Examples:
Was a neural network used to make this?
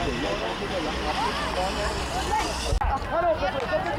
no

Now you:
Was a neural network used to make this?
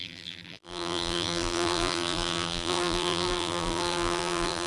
yes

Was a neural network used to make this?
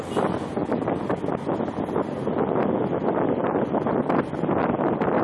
no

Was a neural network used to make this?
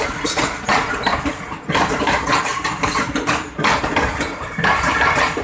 no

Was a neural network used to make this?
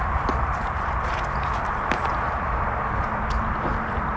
yes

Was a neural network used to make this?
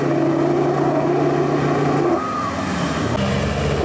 no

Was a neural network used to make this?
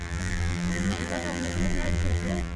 yes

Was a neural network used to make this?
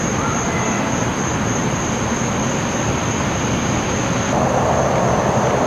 no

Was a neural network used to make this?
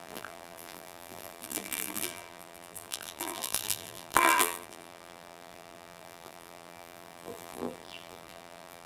yes